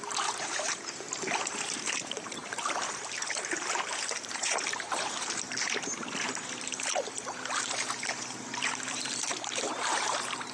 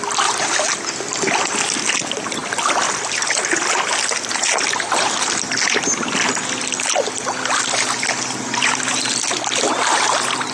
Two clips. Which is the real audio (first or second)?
second